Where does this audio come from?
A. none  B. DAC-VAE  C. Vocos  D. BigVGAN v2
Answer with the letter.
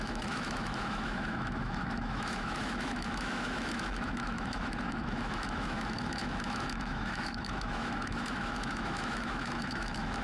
B